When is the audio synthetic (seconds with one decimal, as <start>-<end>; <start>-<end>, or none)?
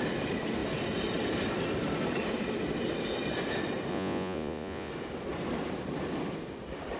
3.9-4.9